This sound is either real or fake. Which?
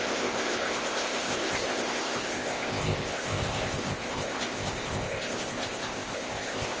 fake